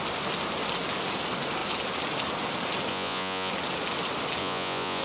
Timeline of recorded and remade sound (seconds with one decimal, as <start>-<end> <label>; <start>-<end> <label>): 0.0-2.9 recorded; 2.9-3.5 remade; 3.5-4.4 recorded; 4.4-5.0 remade